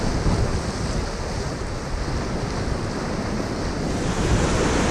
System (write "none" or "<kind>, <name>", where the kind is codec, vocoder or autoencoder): none